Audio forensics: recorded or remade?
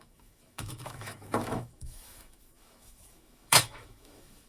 remade